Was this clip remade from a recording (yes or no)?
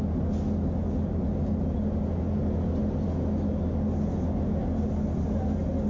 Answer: no